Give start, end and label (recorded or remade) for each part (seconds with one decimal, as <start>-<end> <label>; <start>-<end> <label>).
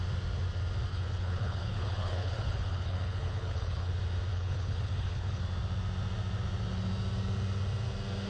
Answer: 0.0-0.9 recorded; 0.9-3.9 remade; 3.9-4.3 recorded; 4.3-5.4 remade; 5.4-8.3 recorded